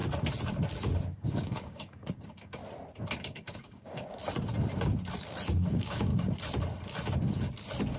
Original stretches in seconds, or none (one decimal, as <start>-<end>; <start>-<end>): 0.0-1.3; 2.6-3.2; 4.2-5.6; 6.1-8.0